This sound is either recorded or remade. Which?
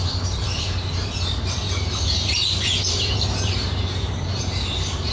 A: remade